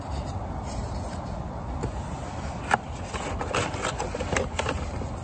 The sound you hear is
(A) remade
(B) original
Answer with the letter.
B